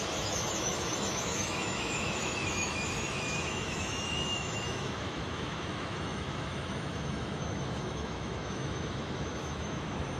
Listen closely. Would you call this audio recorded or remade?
remade